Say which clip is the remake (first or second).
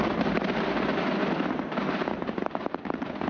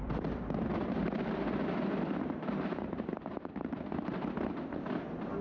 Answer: second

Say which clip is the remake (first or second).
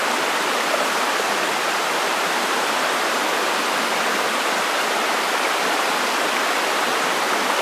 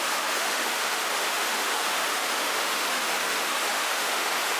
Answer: second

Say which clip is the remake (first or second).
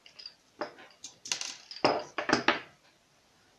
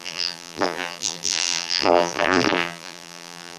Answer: second